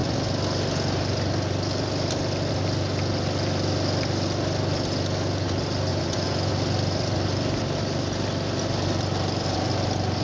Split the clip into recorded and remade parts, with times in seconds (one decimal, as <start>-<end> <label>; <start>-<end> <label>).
0.0-5.9 recorded; 5.9-6.5 remade; 6.5-10.2 recorded

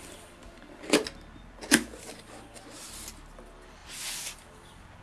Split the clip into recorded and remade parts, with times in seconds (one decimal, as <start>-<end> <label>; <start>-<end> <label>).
0.0-5.0 recorded

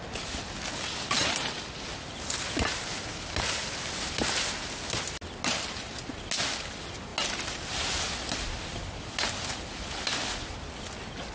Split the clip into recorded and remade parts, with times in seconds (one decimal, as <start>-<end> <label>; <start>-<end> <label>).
0.0-11.3 recorded

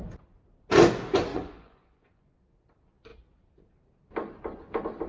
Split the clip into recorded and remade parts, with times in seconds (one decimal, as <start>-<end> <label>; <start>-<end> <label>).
0.0-1.3 recorded; 1.3-2.4 remade; 2.4-5.1 recorded

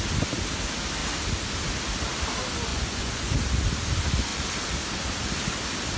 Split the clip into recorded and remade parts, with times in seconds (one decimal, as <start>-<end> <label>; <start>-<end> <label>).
0.0-2.7 recorded; 2.7-3.3 remade; 3.3-6.0 recorded

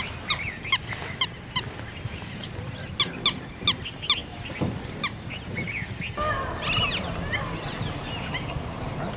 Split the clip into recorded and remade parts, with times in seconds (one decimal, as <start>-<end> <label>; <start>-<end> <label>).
0.0-9.2 recorded